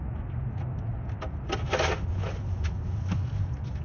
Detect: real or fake real